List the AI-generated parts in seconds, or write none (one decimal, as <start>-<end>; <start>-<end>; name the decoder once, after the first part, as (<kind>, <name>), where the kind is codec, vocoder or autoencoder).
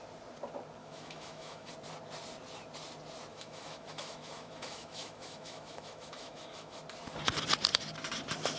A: 0.8-1.7 (autoencoder, DAC-VAE); 3.3-6.8